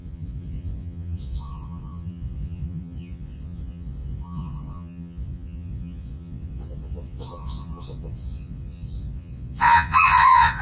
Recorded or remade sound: remade